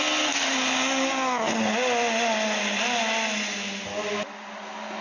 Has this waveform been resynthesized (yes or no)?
no